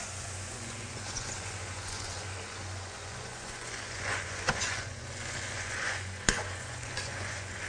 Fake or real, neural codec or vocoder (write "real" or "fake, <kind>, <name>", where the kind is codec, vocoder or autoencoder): fake, vocoder, Vocos